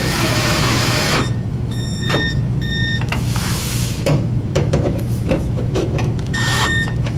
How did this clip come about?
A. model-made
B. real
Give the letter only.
A